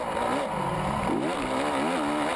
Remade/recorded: recorded